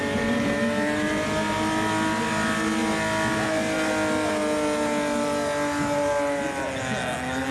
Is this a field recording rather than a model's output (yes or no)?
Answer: yes